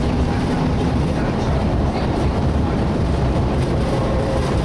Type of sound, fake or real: fake